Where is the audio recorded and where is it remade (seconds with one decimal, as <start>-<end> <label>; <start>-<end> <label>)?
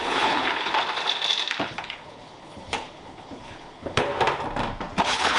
0.0-0.7 remade; 0.7-1.6 recorded; 1.6-4.1 remade; 4.1-5.0 recorded; 5.0-5.4 remade